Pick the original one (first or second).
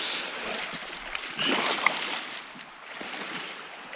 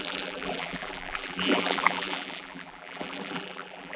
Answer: first